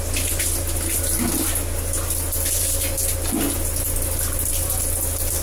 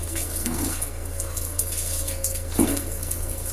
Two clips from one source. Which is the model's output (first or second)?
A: second